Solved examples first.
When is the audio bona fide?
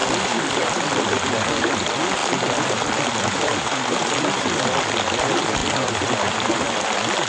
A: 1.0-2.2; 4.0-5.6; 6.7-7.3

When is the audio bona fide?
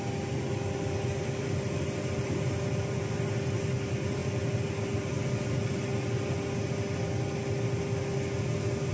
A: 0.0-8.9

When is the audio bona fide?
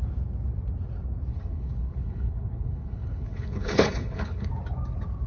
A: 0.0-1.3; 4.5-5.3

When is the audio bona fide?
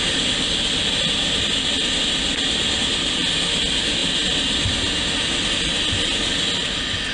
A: 0.0-7.1